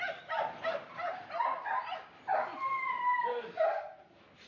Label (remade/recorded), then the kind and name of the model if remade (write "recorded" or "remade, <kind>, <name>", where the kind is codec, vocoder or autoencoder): recorded